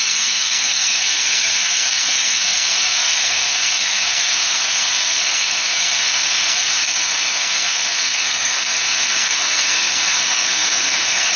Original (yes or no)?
no